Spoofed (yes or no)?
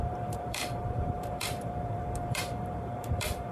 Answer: yes